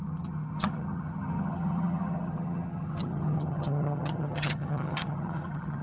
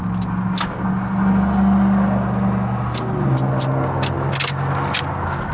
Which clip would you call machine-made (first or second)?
first